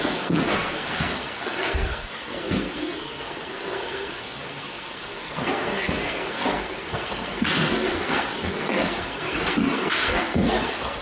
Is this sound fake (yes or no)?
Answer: yes